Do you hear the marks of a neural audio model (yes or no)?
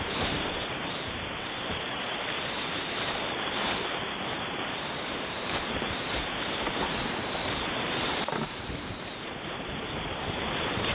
yes